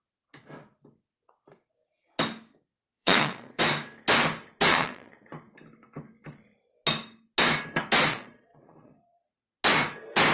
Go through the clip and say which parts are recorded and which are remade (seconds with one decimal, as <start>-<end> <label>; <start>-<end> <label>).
0.0-2.7 recorded; 2.7-3.6 remade; 3.6-4.7 recorded; 4.7-5.3 remade; 5.3-8.1 recorded; 8.1-9.3 remade; 9.3-10.3 recorded

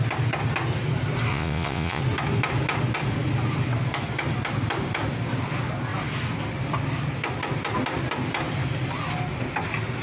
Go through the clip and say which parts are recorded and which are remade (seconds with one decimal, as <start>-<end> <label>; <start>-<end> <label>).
0.0-1.3 recorded; 1.3-2.0 remade; 2.0-10.0 recorded

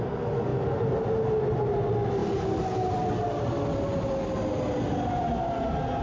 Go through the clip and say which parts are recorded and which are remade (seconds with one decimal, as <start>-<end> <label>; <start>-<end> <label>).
0.0-6.0 recorded